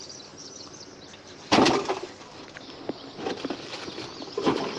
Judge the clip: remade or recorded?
recorded